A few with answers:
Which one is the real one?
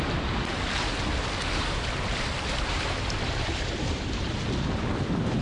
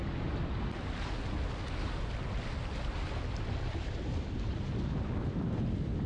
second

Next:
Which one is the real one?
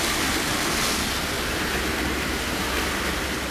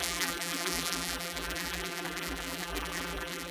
first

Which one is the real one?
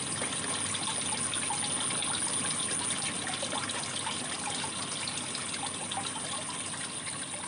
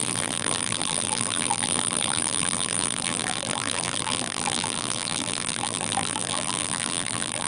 first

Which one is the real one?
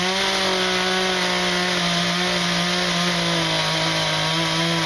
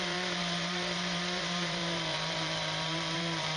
first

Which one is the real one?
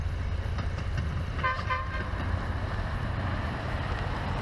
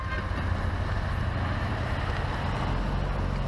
second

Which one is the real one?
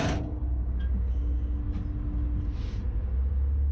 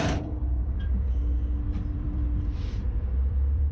first